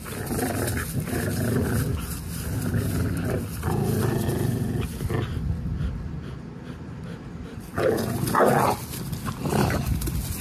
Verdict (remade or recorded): recorded